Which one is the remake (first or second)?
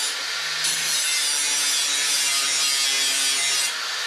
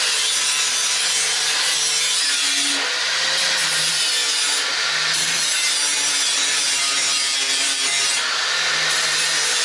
second